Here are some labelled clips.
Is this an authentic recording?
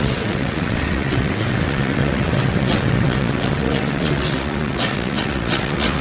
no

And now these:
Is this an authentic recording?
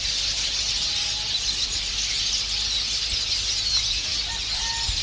yes